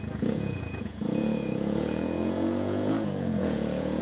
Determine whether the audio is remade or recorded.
remade